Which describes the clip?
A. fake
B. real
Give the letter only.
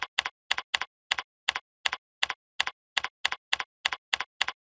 B